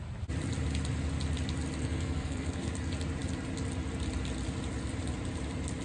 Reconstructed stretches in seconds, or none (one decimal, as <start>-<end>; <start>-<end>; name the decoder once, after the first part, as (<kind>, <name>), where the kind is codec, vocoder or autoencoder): 1.8-2.7 (codec, SNAC)